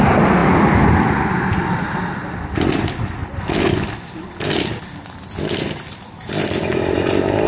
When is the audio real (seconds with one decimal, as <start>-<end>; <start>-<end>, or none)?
0.0-7.5